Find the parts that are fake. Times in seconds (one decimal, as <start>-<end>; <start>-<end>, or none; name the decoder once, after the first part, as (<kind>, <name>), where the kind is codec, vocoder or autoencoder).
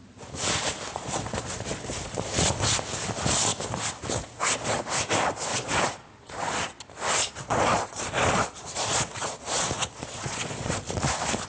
0.9-2.8 (vocoder, Vocos); 5.5-6.7; 7.2-10.9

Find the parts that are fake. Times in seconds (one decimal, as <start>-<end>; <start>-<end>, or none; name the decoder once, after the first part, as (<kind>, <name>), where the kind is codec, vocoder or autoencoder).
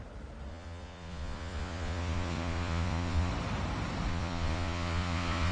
0.5-3.3 (vocoder, Vocos); 4.1-5.5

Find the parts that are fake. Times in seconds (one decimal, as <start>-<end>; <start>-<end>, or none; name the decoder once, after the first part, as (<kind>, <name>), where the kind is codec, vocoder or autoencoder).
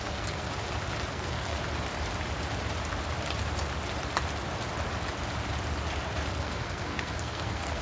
0.0-0.5 (codec, SNAC); 1.1-1.6; 6.3-7.8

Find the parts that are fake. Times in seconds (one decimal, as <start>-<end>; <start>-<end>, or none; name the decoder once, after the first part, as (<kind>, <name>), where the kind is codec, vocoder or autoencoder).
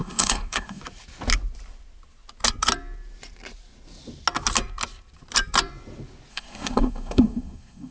0.0-0.8 (codec, SNAC); 6.3-7.9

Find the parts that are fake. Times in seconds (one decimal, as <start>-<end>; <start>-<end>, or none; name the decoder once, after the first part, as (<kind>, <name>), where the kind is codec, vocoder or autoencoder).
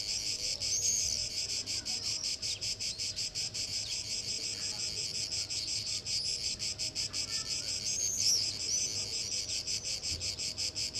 1.2-4.4 (vocoder, BigVGAN v2)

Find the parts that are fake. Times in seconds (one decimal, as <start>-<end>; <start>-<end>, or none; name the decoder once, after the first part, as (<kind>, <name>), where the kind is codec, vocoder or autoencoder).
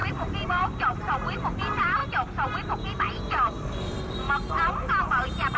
0.0-5.6 (vocoder, BigVGAN v2)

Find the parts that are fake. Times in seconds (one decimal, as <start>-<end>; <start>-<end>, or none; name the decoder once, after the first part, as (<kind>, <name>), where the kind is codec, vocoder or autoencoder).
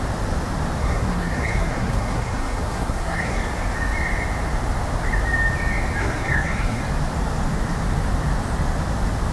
0.8-3.4 (codec, SNAC); 6.0-6.8